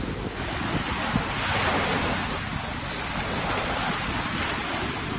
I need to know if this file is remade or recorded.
recorded